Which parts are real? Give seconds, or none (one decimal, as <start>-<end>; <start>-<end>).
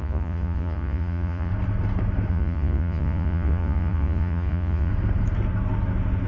1.5-2.3; 4.9-6.3